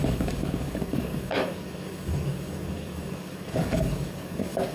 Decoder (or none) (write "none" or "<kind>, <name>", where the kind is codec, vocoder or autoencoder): codec, DAC